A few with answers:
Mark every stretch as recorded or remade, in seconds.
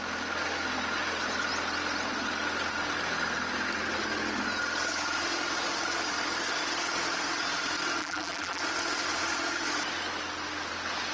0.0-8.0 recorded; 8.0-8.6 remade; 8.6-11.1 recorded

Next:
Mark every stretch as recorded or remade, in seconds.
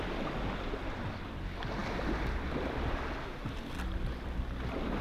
0.0-5.0 recorded